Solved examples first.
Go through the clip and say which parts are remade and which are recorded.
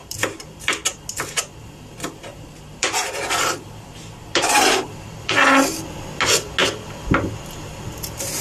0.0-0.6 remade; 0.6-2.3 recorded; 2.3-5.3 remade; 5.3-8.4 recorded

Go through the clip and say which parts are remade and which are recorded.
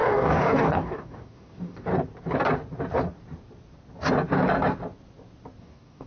0.0-1.9 remade; 1.9-5.6 recorded; 5.6-6.1 remade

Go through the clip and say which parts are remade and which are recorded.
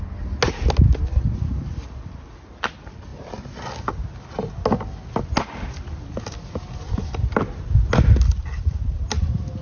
0.0-9.6 recorded